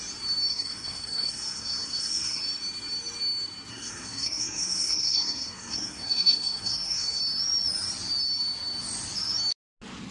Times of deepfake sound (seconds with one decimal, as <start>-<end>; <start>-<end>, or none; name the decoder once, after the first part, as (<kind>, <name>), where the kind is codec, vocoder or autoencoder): 0.5-2.4 (codec, SNAC); 3.7-7.2